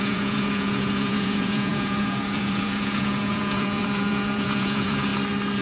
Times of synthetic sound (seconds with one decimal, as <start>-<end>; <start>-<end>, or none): 0.0-5.1

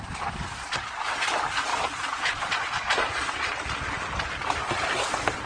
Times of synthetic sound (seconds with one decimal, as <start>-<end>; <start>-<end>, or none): 1.7-3.5

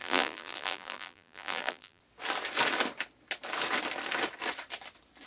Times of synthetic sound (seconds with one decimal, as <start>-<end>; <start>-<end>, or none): 0.0-2.0

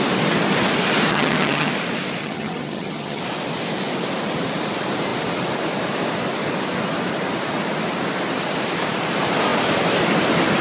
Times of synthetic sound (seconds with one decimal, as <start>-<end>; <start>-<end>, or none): 1.1-1.7; 2.2-3.2

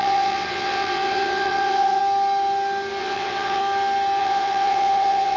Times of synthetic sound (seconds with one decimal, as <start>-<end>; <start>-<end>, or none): 0.0-2.0; 3.0-3.6; 4.2-5.4

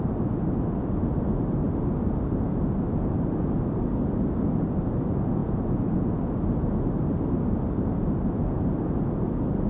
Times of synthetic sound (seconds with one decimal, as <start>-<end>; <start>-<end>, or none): 5.4-6.1